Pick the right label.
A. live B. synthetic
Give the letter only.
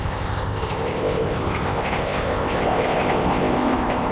B